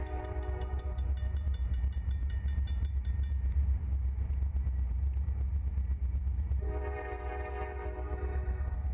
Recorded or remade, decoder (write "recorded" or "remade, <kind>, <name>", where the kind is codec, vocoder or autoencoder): remade, vocoder, BigVGAN v2